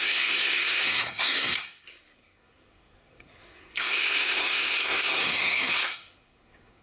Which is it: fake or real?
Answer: fake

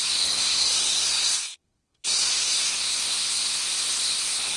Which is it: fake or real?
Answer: fake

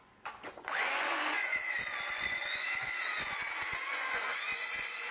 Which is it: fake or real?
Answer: fake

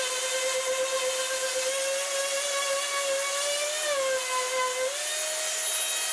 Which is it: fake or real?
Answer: real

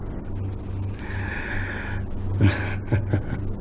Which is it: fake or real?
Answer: real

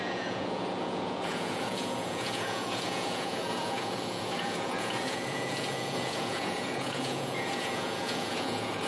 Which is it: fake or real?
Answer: fake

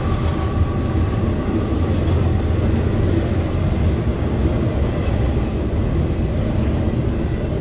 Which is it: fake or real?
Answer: real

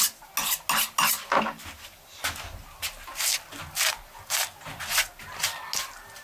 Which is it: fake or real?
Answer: real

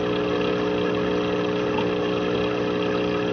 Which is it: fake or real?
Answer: real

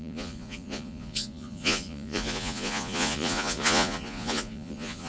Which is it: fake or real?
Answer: fake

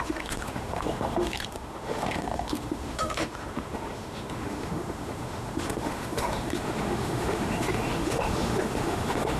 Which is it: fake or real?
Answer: fake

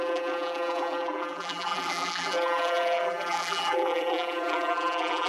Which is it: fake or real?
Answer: fake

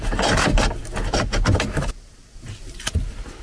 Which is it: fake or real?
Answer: real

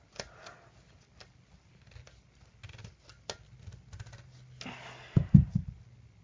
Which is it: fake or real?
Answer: real